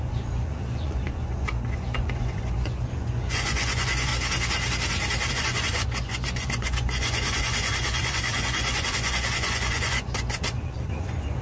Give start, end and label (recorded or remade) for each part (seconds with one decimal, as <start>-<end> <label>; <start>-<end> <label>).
0.0-4.1 remade; 4.1-5.3 recorded; 5.3-11.4 remade